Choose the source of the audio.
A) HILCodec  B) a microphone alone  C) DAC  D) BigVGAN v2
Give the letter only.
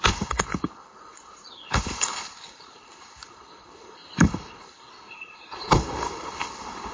A